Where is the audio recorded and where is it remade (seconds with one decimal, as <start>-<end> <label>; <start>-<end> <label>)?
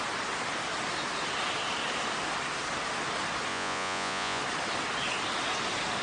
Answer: 0.0-3.5 recorded; 3.5-4.4 remade; 4.4-6.0 recorded